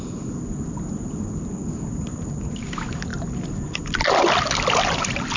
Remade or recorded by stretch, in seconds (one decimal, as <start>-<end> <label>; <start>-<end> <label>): 0.0-5.4 recorded